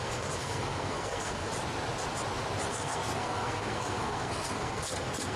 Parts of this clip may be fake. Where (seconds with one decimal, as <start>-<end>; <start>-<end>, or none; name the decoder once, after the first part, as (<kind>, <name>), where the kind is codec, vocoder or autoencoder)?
0.0-1.5 (codec, SNAC); 2.7-5.4